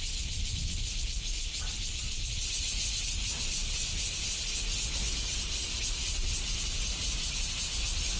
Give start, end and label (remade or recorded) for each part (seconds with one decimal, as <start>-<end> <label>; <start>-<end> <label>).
0.0-8.2 recorded